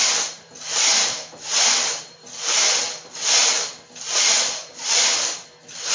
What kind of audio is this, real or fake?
real